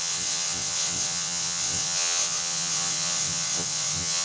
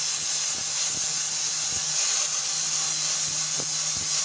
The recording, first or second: second